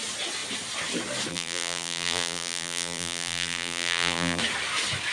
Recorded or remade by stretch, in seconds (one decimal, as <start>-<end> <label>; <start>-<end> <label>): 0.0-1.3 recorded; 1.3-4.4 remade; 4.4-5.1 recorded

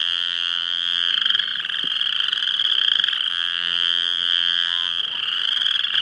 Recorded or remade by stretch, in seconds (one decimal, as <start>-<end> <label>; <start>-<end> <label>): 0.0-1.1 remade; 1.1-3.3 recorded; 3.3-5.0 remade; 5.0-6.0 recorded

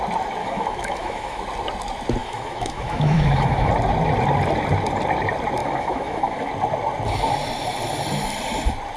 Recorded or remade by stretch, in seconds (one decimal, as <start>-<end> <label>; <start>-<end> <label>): 0.0-0.4 recorded; 0.4-1.4 remade; 1.4-2.2 recorded; 2.2-3.7 remade; 3.7-5.6 recorded; 5.6-6.5 remade; 6.5-9.0 recorded

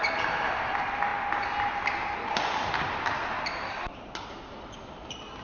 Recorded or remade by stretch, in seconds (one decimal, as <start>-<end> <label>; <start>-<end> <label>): 0.0-5.4 recorded